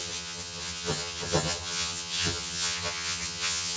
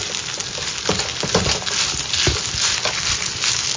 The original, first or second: second